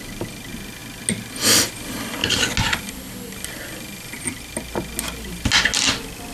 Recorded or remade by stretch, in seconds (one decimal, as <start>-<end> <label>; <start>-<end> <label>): 0.0-6.3 recorded